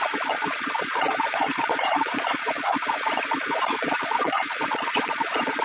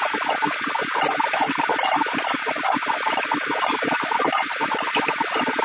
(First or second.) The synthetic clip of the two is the first